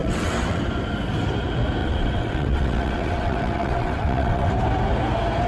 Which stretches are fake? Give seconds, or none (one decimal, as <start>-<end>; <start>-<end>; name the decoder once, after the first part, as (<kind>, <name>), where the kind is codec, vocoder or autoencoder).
0.0-0.6 (vocoder, WaveNeXt); 1.8-4.5